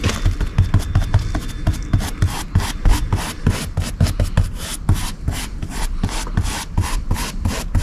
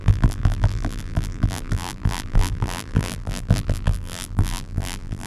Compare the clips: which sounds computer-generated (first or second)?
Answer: second